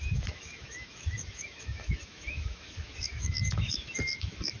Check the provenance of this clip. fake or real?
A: fake